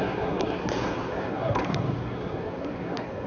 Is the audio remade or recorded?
remade